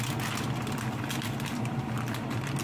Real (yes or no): yes